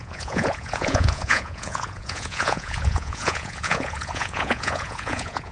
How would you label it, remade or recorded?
remade